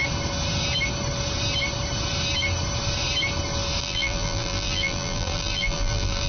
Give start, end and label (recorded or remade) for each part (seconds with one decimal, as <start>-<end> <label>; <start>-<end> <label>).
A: 0.0-3.8 recorded; 3.8-6.3 remade